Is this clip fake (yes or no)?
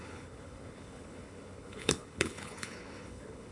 yes